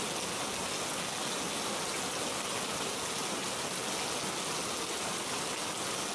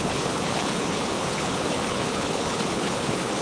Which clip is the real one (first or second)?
first